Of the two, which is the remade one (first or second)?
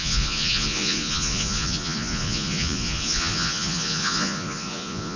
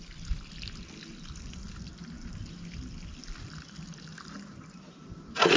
first